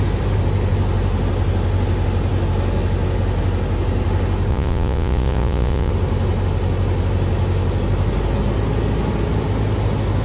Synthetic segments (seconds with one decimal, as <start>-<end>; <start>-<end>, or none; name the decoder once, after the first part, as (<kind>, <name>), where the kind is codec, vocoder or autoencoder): 4.5-5.9 (vocoder, Vocos)